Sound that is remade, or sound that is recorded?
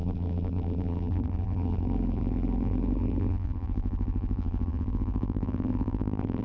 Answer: remade